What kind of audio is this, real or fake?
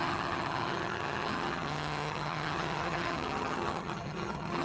fake